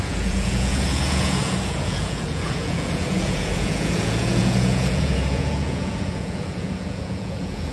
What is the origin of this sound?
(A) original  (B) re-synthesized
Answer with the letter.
B